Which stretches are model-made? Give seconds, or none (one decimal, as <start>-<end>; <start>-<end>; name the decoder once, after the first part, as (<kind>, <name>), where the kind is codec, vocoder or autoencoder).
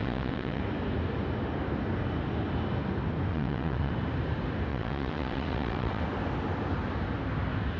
0.0-0.6 (vocoder, WaveNeXt); 3.3-3.9; 4.7-6.0